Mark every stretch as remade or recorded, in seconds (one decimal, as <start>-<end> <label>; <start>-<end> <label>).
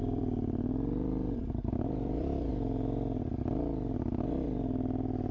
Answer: 0.0-2.5 remade; 2.5-5.3 recorded